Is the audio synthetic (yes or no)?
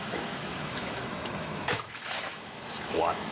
yes